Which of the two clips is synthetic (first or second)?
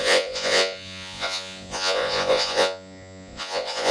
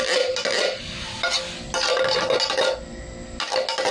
first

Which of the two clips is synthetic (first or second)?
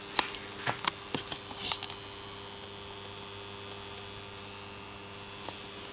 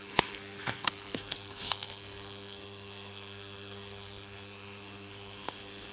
second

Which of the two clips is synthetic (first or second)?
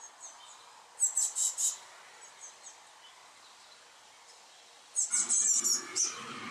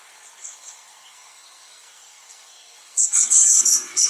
second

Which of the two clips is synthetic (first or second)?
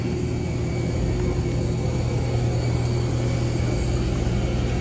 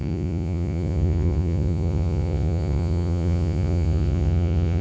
second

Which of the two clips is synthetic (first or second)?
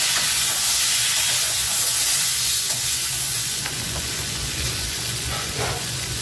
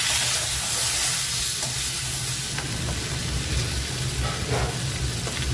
first